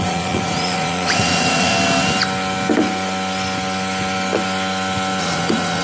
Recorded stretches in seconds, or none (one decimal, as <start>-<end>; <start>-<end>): 1.7-5.2

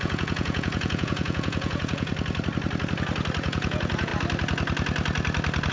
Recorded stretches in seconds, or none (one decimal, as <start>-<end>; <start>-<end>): 2.1-3.4; 4.1-5.7